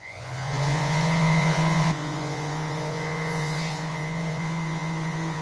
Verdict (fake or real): fake